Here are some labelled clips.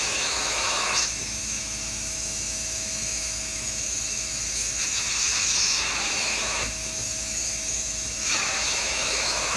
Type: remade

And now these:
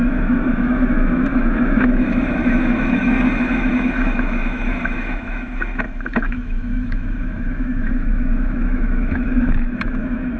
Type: remade